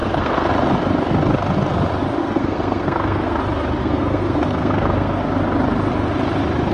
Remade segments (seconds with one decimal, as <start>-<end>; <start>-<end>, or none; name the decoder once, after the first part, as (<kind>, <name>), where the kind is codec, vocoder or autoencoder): 0.0-0.5 (codec, SNAC); 2.2-3.4; 3.8-5.2